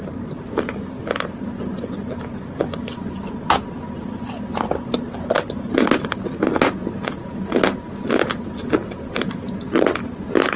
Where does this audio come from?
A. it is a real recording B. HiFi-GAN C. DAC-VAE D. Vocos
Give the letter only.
A